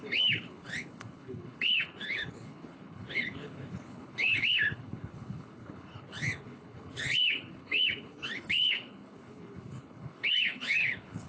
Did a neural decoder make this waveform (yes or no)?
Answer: yes